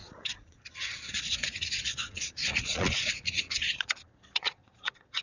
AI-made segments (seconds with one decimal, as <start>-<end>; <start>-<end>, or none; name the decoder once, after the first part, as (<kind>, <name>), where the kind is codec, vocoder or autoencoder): 0.0-5.2 (vocoder, Vocos)